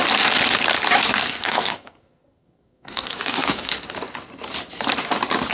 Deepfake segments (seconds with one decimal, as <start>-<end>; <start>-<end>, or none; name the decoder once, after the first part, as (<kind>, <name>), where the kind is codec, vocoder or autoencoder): 1.2-3.7 (codec, SNAC)